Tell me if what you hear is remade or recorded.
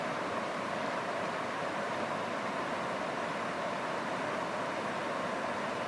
recorded